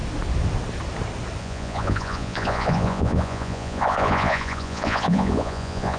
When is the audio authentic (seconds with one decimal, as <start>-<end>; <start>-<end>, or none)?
0.0-1.4